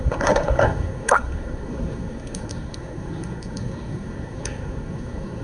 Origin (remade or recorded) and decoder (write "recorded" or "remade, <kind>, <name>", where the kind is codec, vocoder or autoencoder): remade, codec, SNAC